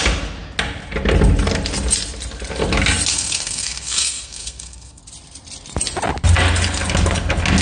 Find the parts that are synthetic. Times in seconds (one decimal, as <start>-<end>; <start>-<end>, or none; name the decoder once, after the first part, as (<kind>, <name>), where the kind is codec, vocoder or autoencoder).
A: 3.1-5.0 (codec, SNAC)